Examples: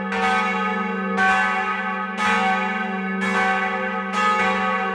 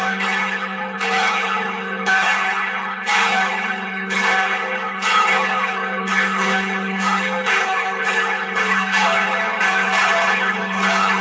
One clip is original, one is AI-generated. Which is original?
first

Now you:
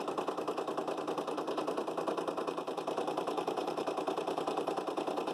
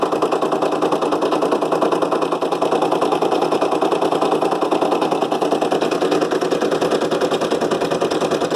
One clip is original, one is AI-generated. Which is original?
second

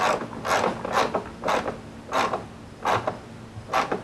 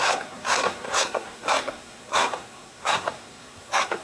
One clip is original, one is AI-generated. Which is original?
first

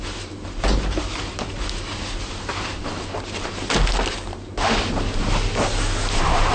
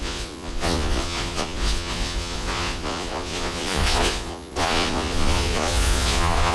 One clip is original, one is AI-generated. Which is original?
first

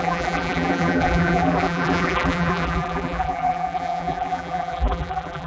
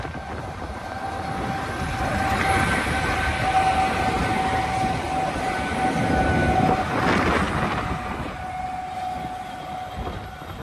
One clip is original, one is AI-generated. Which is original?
second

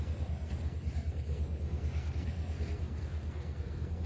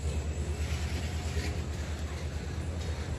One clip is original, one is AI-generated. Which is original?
second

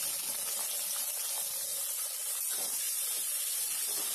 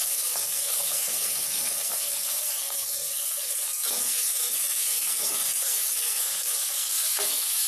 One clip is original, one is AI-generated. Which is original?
first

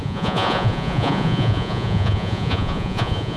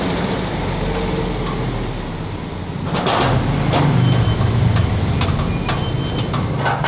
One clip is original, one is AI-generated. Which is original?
second